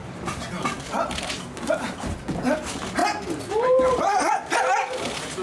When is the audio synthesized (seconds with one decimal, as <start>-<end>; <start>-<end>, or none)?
0.0-2.2; 3.0-4.2